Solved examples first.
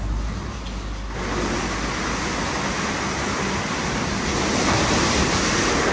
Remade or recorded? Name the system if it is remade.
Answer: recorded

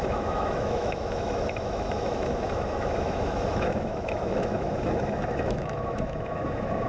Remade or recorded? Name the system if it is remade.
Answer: remade, autoencoder, DAC-VAE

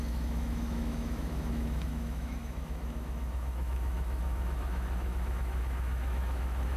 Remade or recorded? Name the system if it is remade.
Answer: remade, autoencoder, DAC-VAE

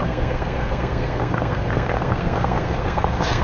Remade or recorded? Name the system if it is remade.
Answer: remade, codec, SNAC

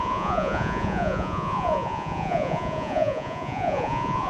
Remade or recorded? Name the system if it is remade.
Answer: remade, vocoder, Vocos